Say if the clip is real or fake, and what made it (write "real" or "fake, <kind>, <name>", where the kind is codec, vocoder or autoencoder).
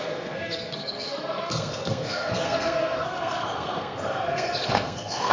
fake, codec, SNAC